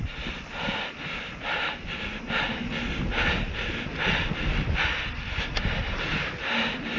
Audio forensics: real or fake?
real